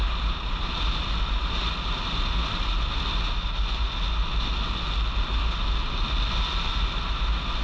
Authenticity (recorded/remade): recorded